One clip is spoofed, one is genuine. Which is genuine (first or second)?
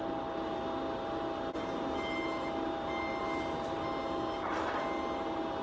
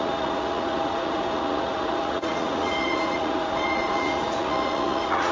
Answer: first